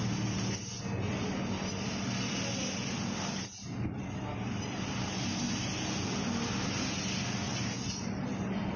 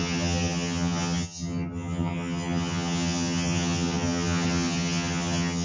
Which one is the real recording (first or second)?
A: first